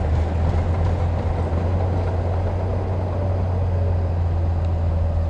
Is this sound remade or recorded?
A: recorded